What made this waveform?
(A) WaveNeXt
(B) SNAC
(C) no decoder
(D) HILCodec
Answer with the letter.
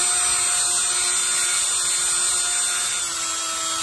C